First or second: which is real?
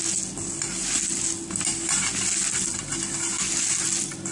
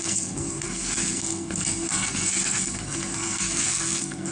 first